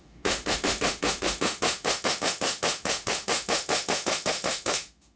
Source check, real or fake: fake